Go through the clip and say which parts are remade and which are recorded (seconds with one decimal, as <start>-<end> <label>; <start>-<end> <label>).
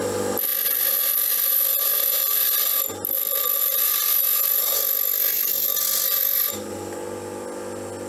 0.0-8.1 recorded